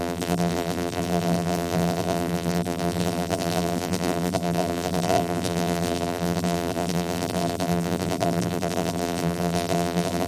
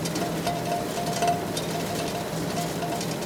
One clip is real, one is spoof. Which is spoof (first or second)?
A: first